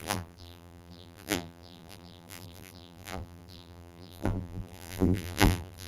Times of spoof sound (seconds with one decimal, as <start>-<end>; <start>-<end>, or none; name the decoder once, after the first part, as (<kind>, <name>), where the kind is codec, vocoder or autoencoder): 0.0-5.9 (vocoder, BigVGAN v2)